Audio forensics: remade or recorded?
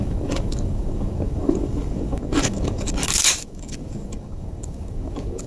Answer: remade